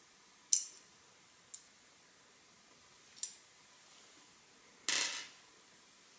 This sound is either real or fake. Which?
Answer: real